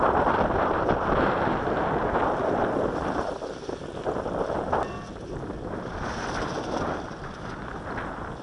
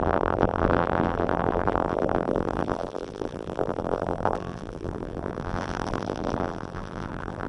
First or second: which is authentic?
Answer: first